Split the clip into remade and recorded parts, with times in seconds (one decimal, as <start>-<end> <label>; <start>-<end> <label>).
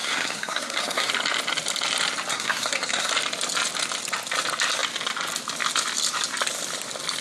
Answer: 0.0-1.1 remade; 1.1-2.3 recorded; 2.3-3.1 remade; 3.1-7.2 recorded